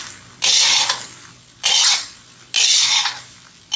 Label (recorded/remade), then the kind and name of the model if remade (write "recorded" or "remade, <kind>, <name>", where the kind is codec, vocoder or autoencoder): recorded